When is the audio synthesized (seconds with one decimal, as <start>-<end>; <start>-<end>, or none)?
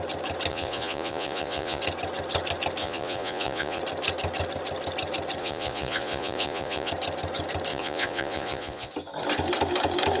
0.5-1.8; 2.8-3.8; 5.4-6.9; 7.7-8.9